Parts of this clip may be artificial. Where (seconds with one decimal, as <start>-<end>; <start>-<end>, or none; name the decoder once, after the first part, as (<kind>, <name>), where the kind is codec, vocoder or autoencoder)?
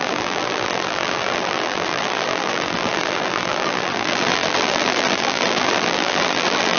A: 0.0-6.8 (vocoder, BigVGAN v2)